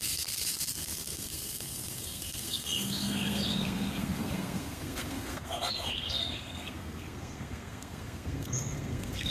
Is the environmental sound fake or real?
fake